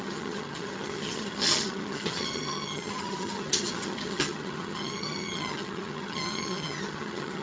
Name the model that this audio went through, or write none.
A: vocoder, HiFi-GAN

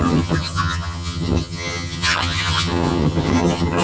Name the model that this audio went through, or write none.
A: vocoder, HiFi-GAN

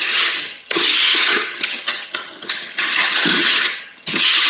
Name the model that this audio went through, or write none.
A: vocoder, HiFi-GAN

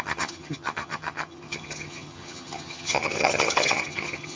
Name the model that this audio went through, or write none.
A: vocoder, HiFi-GAN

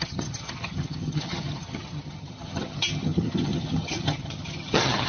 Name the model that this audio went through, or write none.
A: vocoder, HiFi-GAN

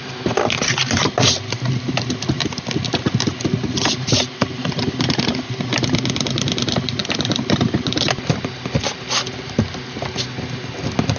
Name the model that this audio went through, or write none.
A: none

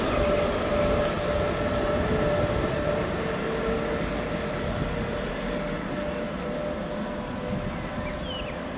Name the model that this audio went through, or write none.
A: none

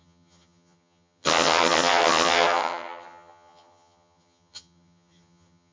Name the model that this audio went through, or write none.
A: vocoder, HiFi-GAN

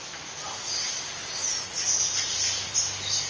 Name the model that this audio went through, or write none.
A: none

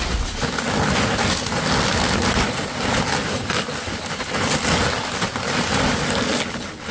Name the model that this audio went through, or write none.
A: none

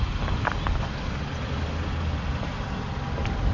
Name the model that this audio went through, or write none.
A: none